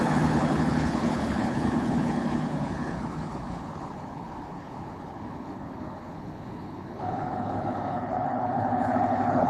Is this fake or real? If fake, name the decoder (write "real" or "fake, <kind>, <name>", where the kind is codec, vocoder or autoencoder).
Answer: fake, codec, HILCodec